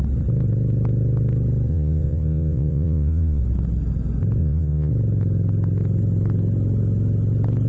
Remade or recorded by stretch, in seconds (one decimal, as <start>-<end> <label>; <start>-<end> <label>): 0.0-1.7 recorded; 1.7-3.4 remade; 3.4-4.4 recorded; 4.4-4.9 remade; 4.9-7.7 recorded